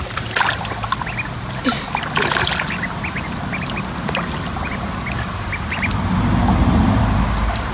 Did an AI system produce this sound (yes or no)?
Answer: no